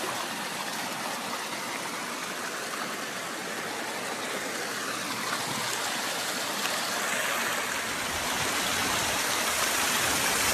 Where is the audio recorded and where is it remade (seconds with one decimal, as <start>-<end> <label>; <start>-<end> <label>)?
0.0-10.5 recorded